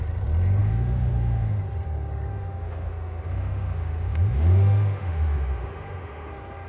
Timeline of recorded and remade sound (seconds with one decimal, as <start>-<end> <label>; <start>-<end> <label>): 0.0-0.6 recorded; 0.6-1.6 remade; 1.6-2.3 recorded; 2.3-6.3 remade; 6.3-6.7 recorded